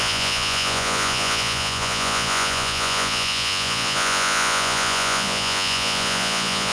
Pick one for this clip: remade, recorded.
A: remade